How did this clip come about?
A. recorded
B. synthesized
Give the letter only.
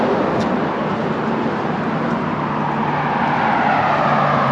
A